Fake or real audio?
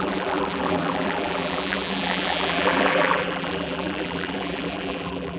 fake